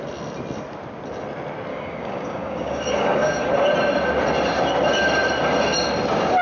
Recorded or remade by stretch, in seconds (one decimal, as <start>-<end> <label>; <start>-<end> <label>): 0.0-1.7 recorded; 1.7-3.5 remade; 3.5-6.4 recorded